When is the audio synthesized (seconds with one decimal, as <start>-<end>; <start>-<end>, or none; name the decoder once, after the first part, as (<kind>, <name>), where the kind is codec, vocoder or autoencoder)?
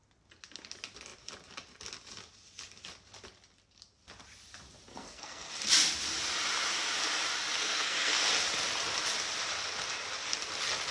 4.9-5.5 (codec, SNAC); 7.6-8.3